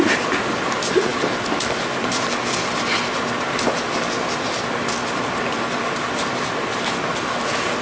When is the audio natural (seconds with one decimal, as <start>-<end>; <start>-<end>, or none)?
0.0-7.8

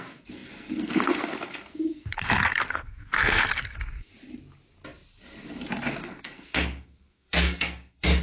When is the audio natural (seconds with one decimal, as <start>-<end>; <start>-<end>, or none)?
4.1-5.9

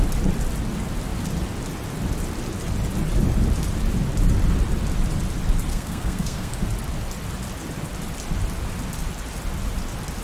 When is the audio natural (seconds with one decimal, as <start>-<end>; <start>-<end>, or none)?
0.0-5.7; 6.5-10.2